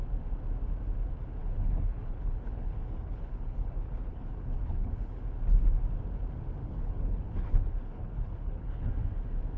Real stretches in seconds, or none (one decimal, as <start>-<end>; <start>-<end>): 0.0-1.4; 5.2-6.6; 8.9-9.6